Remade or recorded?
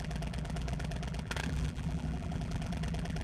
remade